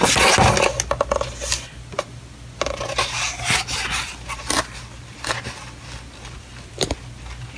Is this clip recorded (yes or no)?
yes